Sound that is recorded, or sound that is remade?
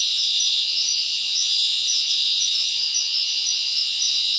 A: remade